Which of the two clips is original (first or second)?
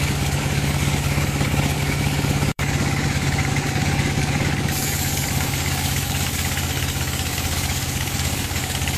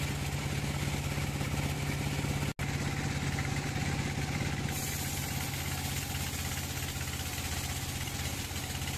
second